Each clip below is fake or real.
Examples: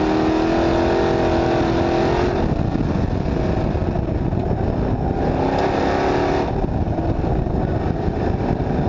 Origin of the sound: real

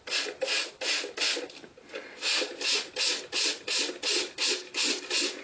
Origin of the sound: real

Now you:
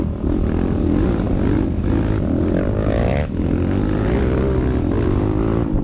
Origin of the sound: real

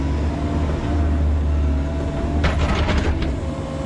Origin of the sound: real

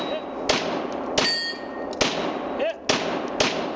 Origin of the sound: real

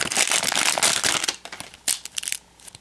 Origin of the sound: real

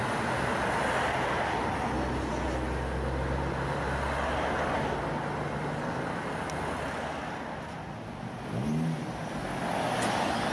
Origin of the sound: real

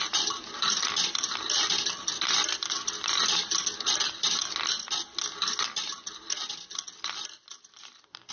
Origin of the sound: real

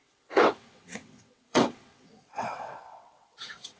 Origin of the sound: fake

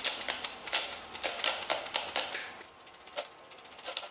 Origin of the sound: real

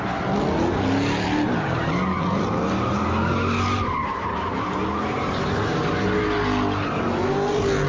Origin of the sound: real